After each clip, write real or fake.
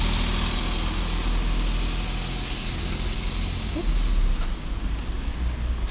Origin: real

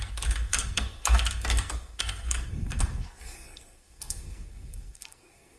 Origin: fake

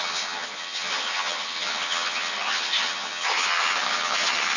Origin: fake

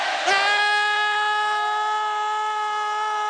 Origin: real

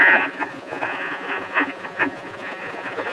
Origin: fake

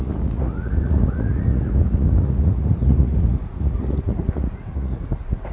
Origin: fake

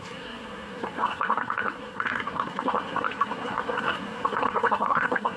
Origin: fake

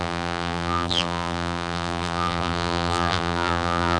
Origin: fake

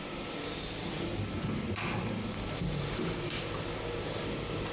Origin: real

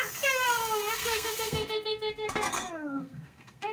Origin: fake